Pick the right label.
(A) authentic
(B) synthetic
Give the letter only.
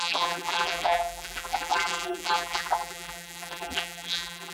B